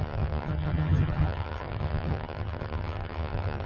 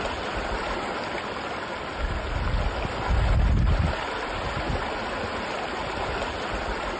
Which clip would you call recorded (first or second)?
second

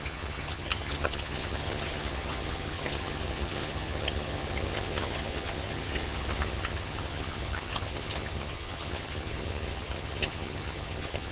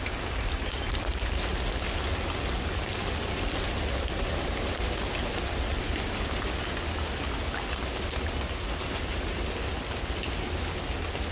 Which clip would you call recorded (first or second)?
second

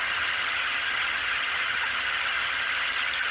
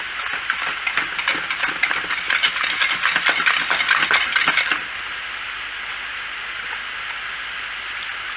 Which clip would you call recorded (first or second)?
second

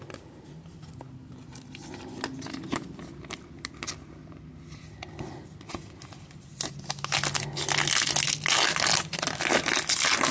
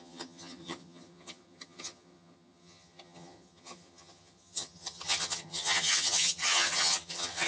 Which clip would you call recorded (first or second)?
first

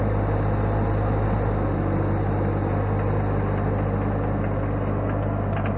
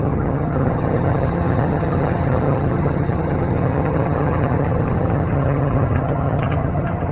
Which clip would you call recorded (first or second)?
first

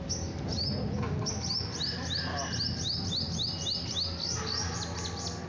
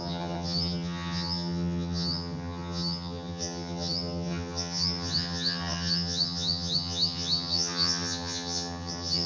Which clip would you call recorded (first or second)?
first